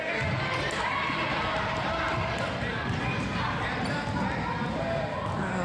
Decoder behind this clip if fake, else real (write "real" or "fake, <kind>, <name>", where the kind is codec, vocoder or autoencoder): real